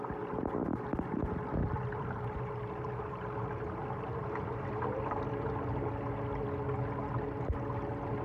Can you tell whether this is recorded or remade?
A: recorded